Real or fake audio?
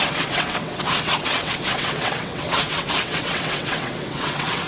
fake